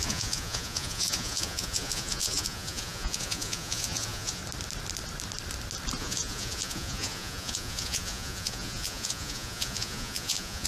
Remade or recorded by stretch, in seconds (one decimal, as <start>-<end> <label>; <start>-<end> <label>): 0.0-4.4 remade; 4.4-6.0 recorded; 6.0-10.7 remade